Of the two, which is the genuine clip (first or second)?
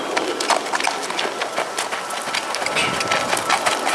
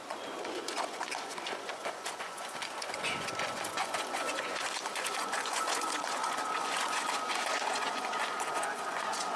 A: first